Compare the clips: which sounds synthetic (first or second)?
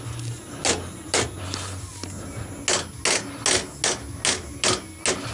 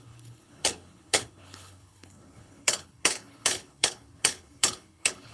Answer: second